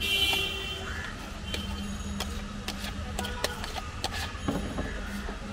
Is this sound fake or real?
real